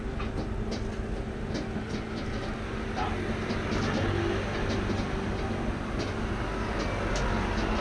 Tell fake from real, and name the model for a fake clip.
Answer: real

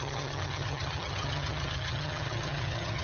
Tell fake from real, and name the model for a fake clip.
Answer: fake, vocoder, HiFi-GAN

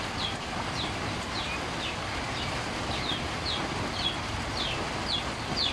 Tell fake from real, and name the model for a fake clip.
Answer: real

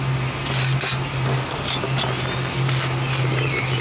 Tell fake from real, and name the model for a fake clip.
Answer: real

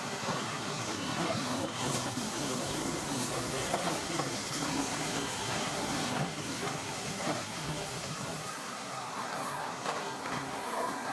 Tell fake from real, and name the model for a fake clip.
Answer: fake, codec, SNAC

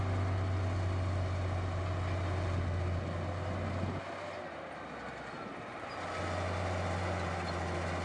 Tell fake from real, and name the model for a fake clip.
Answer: real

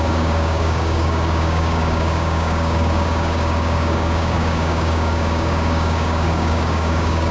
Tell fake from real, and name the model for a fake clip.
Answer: fake, codec, DAC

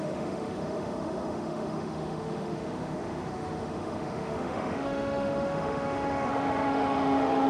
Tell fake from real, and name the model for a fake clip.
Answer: fake, autoencoder, DAC-VAE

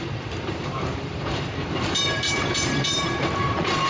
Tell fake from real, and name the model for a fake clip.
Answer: fake, vocoder, BigVGAN v2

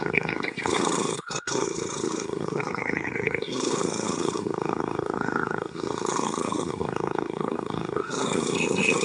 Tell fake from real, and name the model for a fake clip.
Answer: fake, codec, SNAC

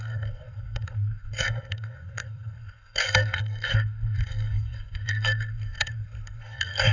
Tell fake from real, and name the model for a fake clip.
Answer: fake, codec, SNAC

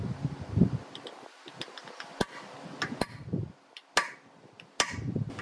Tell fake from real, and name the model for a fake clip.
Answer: real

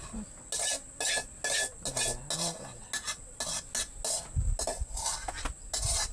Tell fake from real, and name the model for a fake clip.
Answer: real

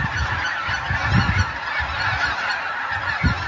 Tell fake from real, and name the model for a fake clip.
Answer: real